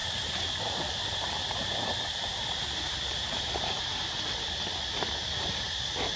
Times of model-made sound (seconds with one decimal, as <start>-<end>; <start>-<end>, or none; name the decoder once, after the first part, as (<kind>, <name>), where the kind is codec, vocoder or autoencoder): 0.0-3.7 (vocoder, BigVGAN v2)